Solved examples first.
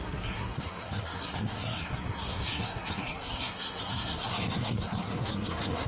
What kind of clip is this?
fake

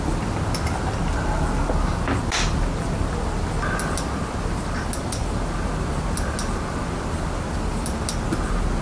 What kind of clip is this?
real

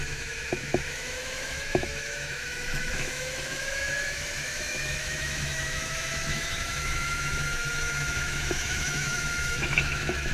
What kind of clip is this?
fake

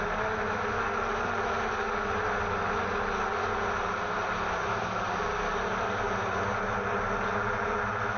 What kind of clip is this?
real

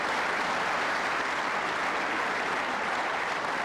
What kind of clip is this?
real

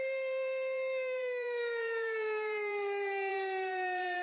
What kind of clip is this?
fake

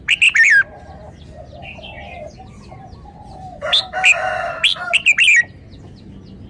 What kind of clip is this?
real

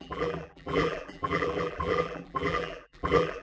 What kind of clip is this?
fake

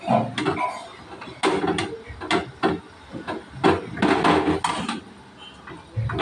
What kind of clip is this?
real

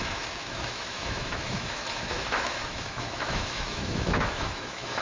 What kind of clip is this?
fake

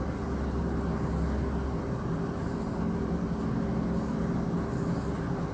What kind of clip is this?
real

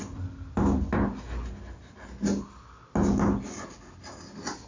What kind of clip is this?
real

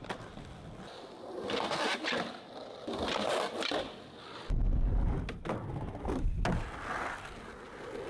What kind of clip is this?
real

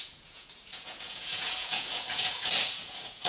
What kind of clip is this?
fake